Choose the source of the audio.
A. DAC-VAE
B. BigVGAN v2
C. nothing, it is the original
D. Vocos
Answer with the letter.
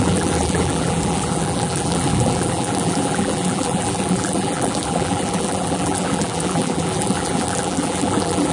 B